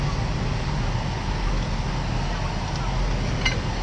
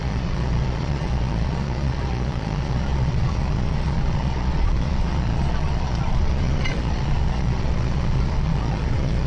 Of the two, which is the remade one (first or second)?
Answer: second